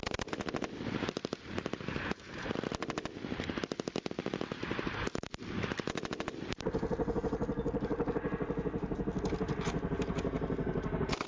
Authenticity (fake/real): real